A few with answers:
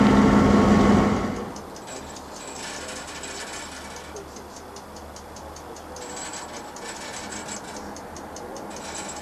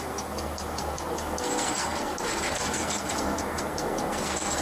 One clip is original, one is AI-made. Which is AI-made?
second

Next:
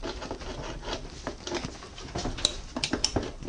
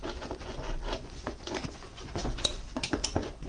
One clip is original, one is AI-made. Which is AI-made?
second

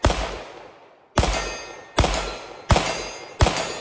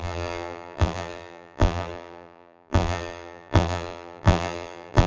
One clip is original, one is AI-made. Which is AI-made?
second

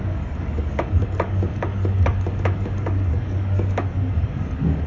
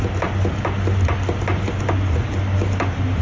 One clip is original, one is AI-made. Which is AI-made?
first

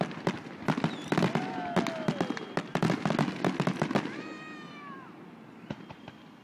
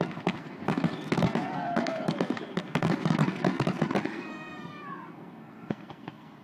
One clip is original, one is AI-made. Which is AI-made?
second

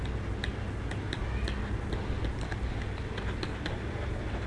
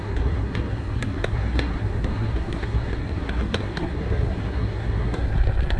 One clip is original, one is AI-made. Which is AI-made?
second